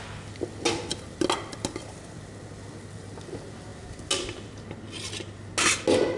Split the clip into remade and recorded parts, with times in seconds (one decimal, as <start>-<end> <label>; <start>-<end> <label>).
0.0-6.2 recorded